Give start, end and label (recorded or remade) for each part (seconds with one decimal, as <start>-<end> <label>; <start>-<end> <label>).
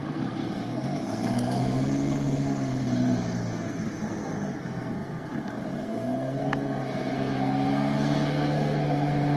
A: 0.0-9.4 remade